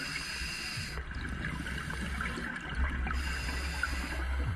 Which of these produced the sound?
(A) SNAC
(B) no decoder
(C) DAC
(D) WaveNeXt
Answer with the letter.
B